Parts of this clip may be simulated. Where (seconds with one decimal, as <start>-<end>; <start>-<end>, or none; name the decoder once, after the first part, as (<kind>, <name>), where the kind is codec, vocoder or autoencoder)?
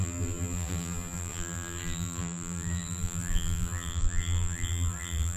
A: 0.0-5.4 (vocoder, BigVGAN v2)